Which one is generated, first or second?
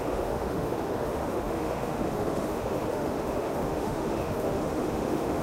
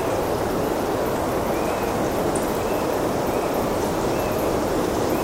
first